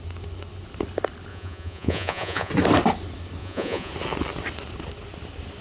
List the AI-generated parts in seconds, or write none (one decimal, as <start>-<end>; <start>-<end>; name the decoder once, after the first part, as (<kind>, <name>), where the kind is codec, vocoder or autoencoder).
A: 1.3-2.5 (vocoder, Vocos); 3.4-3.9